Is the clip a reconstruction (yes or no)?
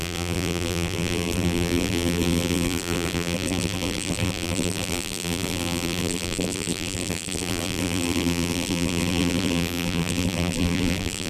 yes